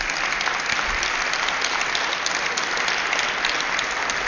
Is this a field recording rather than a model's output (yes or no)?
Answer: yes